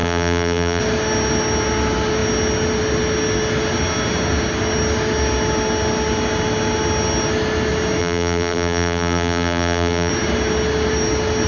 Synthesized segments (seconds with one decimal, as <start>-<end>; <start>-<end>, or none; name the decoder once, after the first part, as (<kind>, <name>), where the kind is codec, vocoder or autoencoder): 0.0-0.8 (vocoder, BigVGAN v2); 8.0-10.1